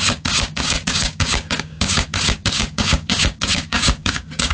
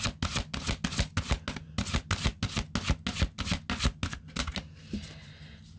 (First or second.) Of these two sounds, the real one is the second